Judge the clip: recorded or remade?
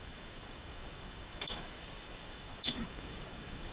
remade